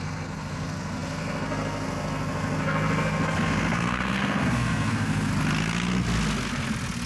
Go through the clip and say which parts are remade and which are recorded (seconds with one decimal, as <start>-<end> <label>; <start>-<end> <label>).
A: 0.0-5.3 remade; 5.3-7.1 recorded